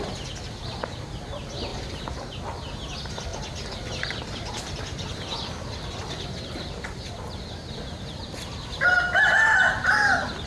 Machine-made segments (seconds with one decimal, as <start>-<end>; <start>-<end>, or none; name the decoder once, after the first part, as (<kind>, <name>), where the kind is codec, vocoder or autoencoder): 1.7-2.4 (vocoder, BigVGAN v2)